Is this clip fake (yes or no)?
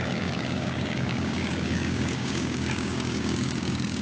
yes